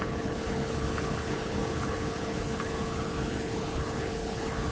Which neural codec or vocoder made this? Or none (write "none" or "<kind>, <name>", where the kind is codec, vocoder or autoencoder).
codec, HILCodec